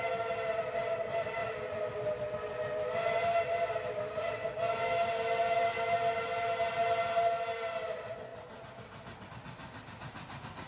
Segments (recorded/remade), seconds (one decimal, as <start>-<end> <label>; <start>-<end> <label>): 0.0-10.7 recorded